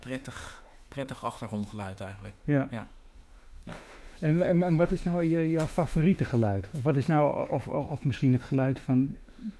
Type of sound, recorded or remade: remade